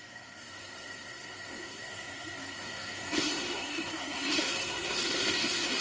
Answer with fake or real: fake